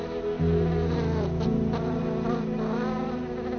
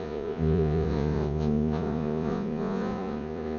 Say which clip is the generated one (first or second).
second